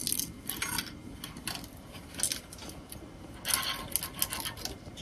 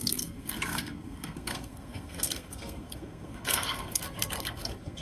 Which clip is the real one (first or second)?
first